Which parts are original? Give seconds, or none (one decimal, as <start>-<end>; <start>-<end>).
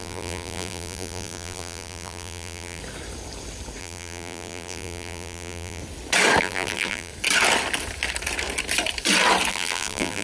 2.8-3.8; 5.8-6.4; 7.1-9.5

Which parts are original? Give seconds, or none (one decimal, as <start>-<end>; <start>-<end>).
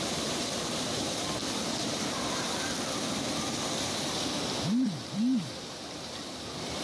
1.4-3.2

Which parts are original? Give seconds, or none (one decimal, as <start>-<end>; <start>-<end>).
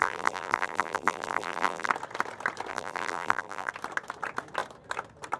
1.9-2.7; 3.7-5.4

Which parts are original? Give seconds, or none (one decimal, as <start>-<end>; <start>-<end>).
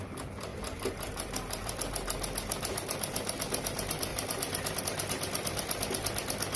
0.0-0.5; 1.7-4.1; 4.8-6.6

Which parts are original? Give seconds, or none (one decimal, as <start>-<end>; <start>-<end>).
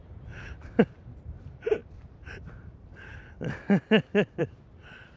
0.0-0.8; 1.8-2.4; 3.1-4.4